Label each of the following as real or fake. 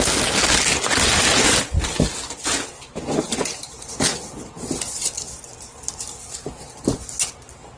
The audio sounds real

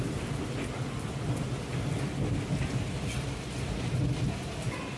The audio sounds real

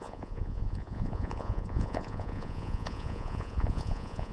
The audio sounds fake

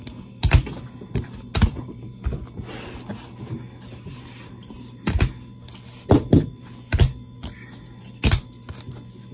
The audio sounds real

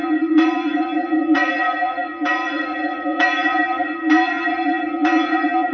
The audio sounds fake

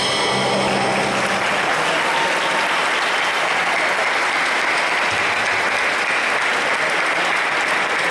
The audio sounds real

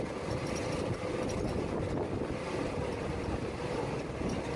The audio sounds real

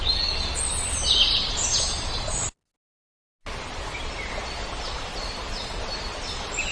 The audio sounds real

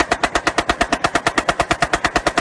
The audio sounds real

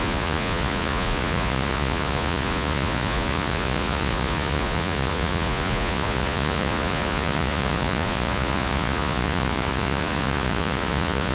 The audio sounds fake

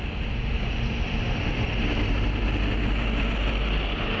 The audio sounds real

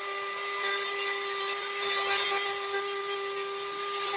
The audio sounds real